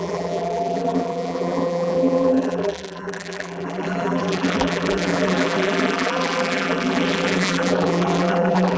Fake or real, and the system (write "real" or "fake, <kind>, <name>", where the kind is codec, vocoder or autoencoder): fake, vocoder, BigVGAN v2